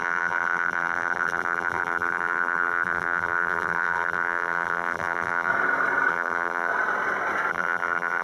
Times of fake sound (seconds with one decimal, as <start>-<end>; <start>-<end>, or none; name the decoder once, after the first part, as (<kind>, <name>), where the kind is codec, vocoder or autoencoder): 0.0-5.5 (vocoder, BigVGAN v2); 6.1-6.7; 7.5-8.2